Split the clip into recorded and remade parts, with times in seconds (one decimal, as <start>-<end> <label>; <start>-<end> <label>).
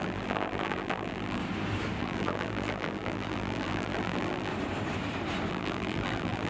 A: 0.0-1.4 remade; 1.4-2.0 recorded; 2.0-4.5 remade; 4.5-5.5 recorded; 5.5-6.5 remade